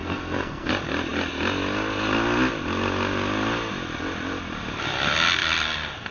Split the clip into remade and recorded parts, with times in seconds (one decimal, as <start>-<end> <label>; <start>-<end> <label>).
0.0-0.7 remade; 0.7-6.1 recorded